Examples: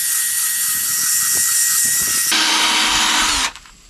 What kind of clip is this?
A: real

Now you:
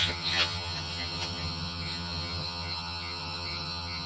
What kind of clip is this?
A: fake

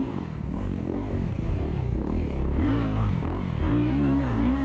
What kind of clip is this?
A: fake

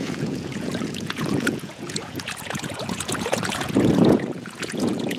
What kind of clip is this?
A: fake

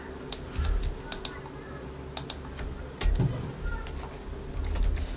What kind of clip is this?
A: real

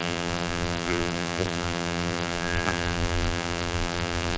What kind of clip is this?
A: fake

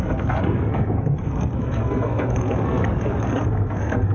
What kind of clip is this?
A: fake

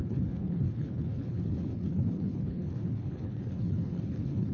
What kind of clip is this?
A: fake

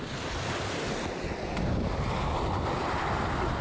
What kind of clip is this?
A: real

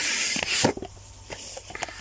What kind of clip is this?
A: fake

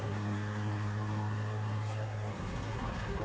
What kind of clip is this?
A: fake